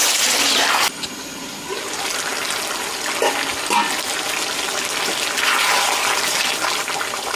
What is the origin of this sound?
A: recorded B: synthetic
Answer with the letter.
A